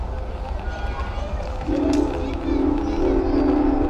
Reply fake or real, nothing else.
real